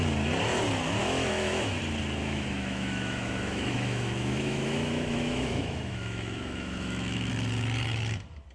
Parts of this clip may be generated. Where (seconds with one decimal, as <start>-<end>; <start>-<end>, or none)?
1.0-1.8; 2.2-7.3